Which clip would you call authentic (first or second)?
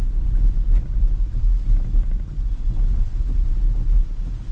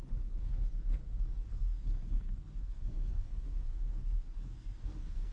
first